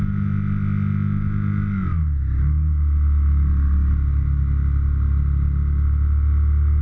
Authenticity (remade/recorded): recorded